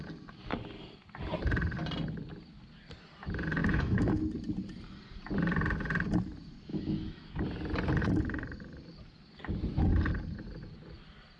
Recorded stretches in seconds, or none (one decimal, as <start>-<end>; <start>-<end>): 0.0-3.6; 4.2-6.7; 7.4-11.4